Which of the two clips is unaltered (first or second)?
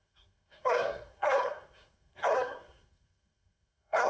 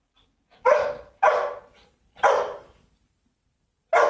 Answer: second